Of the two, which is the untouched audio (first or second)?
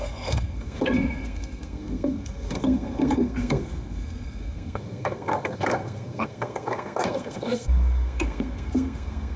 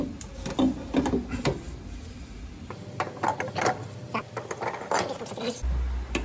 second